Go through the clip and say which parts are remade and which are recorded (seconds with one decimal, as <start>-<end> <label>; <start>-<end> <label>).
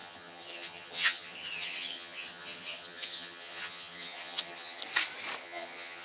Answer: 0.0-4.8 remade; 4.8-5.4 recorded; 5.4-6.0 remade